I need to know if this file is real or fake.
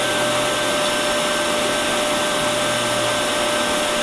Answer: real